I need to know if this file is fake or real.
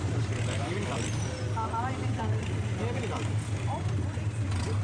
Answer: real